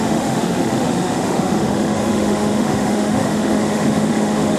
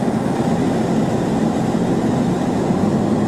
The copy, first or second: first